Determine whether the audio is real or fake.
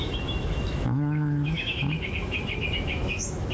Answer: fake